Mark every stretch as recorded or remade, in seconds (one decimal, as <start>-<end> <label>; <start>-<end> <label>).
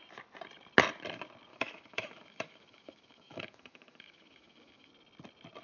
0.0-1.5 recorded; 1.5-4.9 remade; 4.9-5.6 recorded